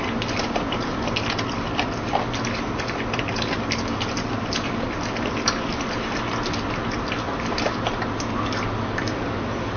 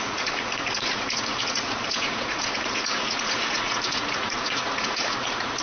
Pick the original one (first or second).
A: first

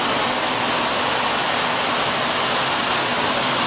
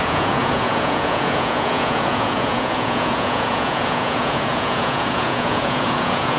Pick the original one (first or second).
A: first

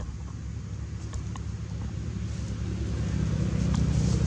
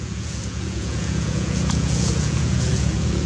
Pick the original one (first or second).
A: first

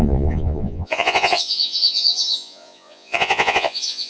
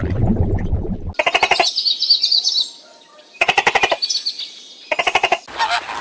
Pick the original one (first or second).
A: second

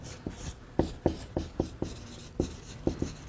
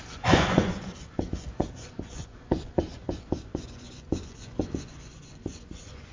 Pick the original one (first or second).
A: first